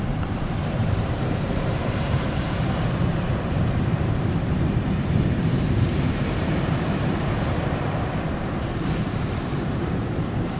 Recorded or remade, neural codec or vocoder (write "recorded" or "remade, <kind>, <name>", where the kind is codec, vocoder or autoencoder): remade, vocoder, BigVGAN v2